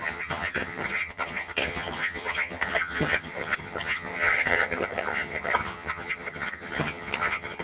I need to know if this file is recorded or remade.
remade